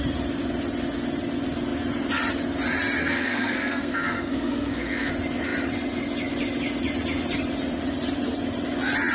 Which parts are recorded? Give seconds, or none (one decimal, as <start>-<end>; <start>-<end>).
0.0-3.0; 5.1-9.1